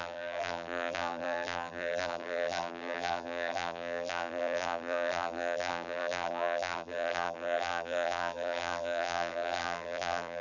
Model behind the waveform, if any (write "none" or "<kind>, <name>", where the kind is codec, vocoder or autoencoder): vocoder, BigVGAN v2